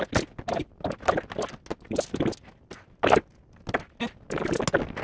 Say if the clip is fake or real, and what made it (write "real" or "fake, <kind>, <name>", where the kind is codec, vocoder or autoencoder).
real